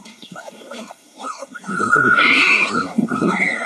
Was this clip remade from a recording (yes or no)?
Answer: yes